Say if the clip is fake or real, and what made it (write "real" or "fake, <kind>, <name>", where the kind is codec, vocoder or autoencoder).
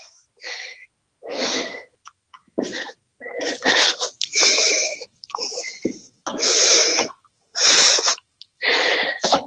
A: fake, autoencoder, DAC-VAE